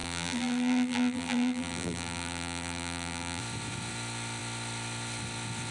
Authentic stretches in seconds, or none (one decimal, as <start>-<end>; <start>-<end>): 3.4-5.7